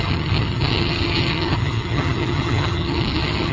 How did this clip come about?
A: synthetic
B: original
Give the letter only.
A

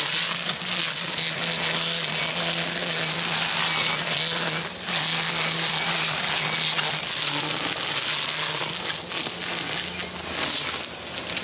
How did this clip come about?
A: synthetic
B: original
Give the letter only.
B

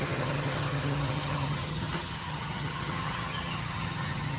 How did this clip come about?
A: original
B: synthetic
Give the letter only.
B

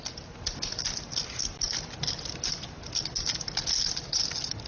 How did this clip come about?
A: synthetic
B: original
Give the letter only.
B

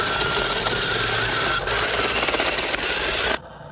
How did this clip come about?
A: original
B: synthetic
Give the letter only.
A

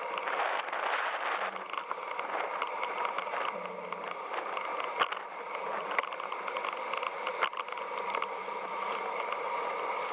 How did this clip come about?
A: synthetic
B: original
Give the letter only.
B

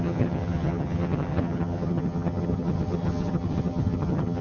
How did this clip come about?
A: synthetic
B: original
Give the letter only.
A